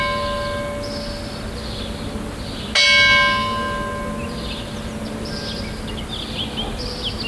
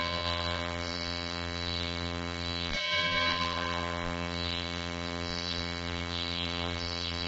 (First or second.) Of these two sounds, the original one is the first